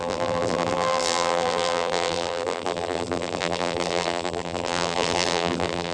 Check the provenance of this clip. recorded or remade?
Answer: remade